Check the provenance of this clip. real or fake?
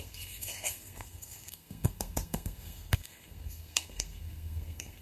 fake